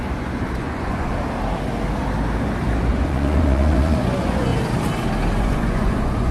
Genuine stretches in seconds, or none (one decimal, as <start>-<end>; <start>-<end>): 1.1-2.9; 4.5-5.4